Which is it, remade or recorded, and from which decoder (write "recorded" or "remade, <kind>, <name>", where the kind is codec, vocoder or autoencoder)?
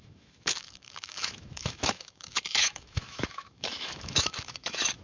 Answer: remade, autoencoder, DAC-VAE